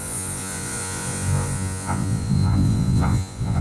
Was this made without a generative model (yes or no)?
no